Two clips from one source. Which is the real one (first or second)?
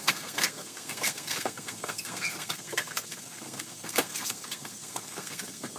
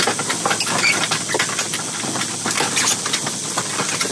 second